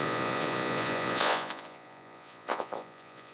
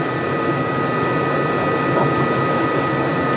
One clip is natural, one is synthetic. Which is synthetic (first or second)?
first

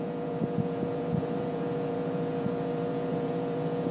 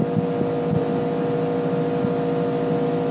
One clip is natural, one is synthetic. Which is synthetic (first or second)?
first